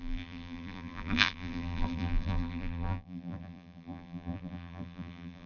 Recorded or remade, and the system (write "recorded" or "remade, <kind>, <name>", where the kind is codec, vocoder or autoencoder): remade, vocoder, BigVGAN v2